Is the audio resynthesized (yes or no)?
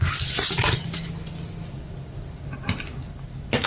no